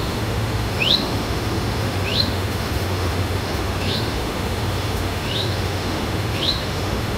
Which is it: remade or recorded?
remade